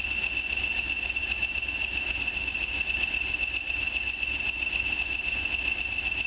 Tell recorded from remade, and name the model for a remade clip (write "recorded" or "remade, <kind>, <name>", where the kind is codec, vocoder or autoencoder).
recorded